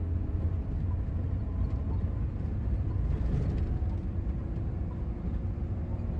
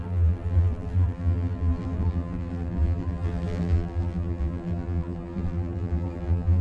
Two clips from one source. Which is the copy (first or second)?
second